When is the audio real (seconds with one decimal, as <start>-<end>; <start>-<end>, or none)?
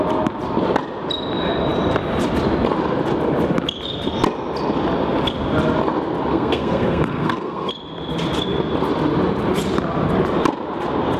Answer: 0.0-6.3; 7.7-11.2